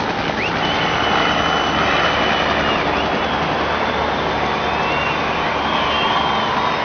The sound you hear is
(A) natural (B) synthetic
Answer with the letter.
A